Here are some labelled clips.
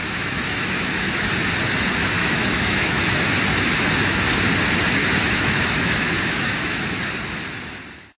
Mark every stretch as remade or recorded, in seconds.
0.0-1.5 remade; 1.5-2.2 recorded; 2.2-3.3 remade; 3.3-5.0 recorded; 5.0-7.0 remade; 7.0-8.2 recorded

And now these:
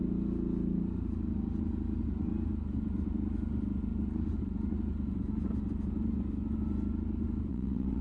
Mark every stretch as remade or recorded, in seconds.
0.0-7.5 recorded; 7.5-8.0 remade

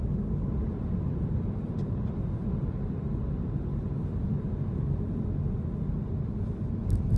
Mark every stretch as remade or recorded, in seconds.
0.0-7.2 recorded

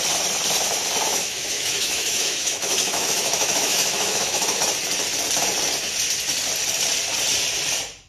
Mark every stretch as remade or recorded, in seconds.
0.0-1.1 recorded; 1.1-4.6 remade; 4.6-8.1 recorded